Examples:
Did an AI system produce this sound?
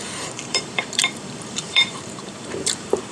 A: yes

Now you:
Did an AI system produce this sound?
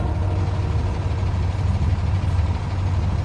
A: no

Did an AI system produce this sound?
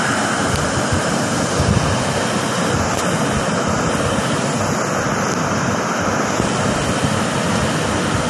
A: no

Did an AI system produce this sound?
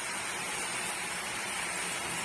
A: yes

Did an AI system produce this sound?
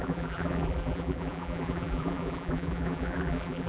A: yes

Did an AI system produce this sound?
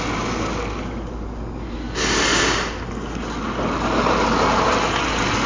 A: no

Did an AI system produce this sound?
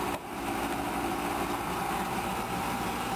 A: yes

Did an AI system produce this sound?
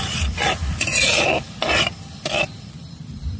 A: no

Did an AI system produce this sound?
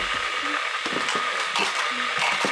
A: no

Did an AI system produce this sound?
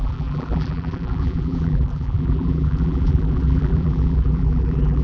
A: yes